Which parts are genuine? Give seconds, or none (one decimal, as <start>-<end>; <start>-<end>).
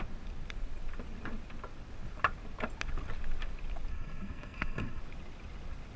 0.0-3.9; 5.0-6.0